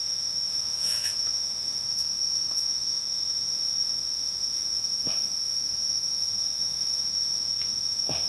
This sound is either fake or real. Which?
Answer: fake